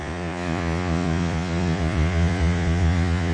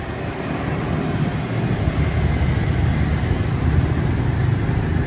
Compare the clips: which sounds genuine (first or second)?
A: second